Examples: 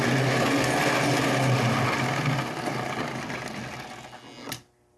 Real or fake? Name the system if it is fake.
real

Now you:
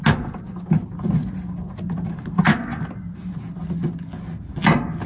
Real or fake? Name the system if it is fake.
real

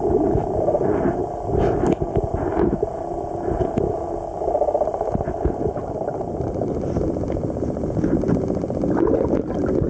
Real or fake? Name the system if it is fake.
real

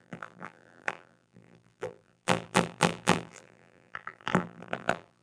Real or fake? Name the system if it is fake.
fake, vocoder, BigVGAN v2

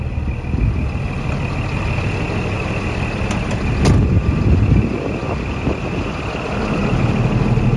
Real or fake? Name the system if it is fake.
real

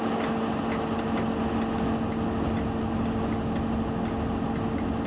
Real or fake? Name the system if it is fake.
real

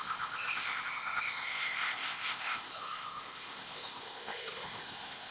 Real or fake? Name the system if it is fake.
fake, codec, ZipCodec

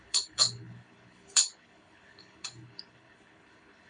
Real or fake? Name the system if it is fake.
fake, codec, HILCodec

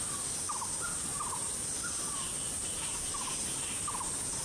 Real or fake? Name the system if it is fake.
real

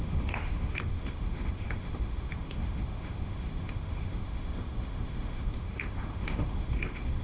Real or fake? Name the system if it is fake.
fake, autoencoder, DAC-VAE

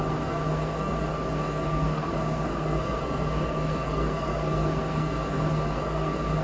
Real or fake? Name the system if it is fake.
fake, codec, SNAC